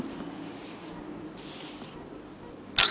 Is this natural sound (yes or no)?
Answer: yes